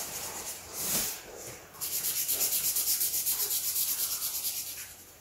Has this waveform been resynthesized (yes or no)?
yes